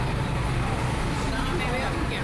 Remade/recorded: recorded